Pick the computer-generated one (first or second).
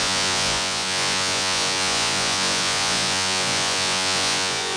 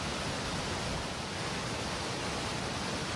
first